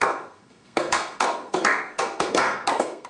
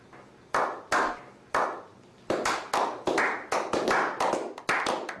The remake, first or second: first